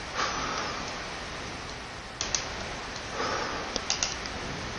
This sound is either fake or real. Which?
real